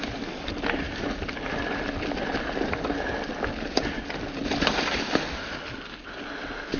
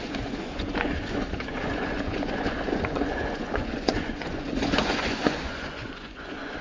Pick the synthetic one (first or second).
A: second